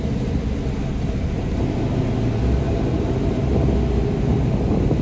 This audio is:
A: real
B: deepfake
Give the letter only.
A